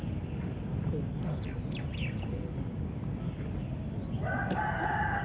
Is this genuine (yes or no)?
yes